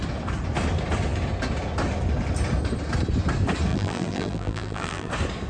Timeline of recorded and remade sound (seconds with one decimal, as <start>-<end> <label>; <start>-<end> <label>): 0.0-3.7 recorded; 3.7-5.1 remade; 5.1-5.5 recorded